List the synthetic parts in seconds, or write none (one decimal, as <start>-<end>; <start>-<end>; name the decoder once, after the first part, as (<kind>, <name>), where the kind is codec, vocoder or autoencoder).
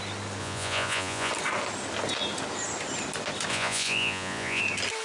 0.4-1.3 (vocoder, Vocos); 3.5-4.6